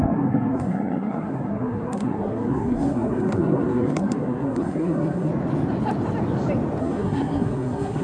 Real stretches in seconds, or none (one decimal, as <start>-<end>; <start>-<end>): 5.3-6.8